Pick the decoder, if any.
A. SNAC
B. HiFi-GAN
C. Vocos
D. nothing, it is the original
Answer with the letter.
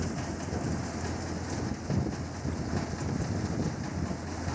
D